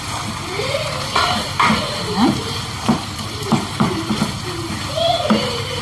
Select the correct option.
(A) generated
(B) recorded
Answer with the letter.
A